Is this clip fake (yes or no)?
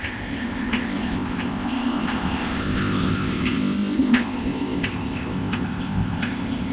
yes